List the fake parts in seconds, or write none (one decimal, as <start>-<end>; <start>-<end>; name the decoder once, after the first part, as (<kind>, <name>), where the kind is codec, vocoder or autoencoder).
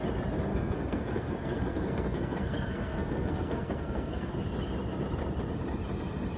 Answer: 0.5-4.3 (codec, SNAC)